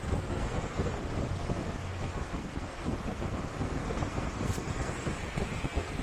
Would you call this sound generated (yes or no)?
yes